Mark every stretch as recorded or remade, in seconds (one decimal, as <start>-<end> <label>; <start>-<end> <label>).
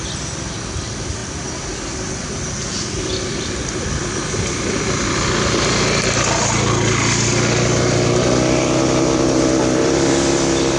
0.0-10.8 recorded